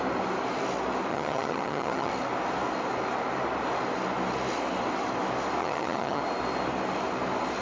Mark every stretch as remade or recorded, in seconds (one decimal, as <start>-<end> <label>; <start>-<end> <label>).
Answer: 0.0-1.1 recorded; 1.1-2.1 remade; 2.1-5.6 recorded; 5.6-6.2 remade; 6.2-7.6 recorded